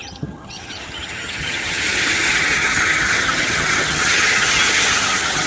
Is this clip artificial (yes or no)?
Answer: yes